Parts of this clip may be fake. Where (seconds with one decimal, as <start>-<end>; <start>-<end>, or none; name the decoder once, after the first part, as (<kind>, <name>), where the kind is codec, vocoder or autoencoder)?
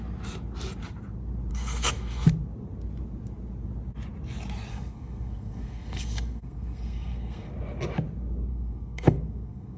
1.5-2.3 (codec, SNAC); 4.7-7.5; 8.5-9.8